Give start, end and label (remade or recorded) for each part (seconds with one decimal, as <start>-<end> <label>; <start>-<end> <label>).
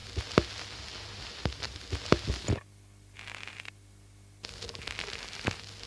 0.0-5.9 recorded